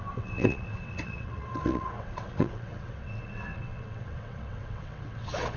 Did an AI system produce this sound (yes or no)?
yes